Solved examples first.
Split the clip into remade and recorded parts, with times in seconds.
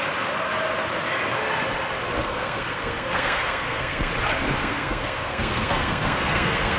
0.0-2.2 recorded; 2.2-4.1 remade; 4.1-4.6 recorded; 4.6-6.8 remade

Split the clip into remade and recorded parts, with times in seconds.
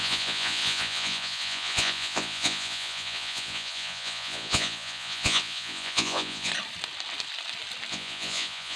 0.0-6.5 remade; 6.5-7.9 recorded; 7.9-8.8 remade